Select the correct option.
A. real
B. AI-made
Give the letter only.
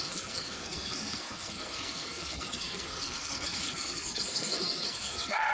B